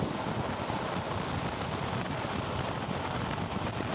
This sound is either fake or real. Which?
real